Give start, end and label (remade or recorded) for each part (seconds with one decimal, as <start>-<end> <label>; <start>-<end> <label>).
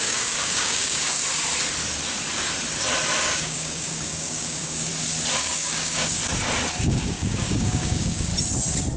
0.0-1.2 remade; 1.2-3.2 recorded; 3.2-4.9 remade; 4.9-5.4 recorded; 5.4-6.2 remade; 6.2-6.8 recorded; 6.8-8.3 remade; 8.3-9.0 recorded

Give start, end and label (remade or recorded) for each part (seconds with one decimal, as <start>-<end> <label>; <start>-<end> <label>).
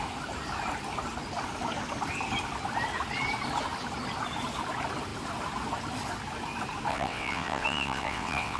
0.0-6.9 recorded; 6.9-8.6 remade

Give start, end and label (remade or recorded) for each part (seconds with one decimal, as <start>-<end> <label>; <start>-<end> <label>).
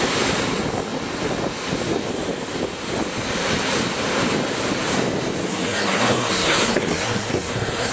0.0-5.5 recorded; 5.5-7.9 remade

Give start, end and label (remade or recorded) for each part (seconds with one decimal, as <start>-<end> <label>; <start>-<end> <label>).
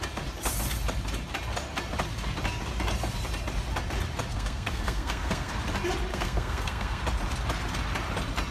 0.0-4.3 recorded; 4.3-5.5 remade; 5.5-6.1 recorded; 6.1-7.0 remade; 7.0-8.5 recorded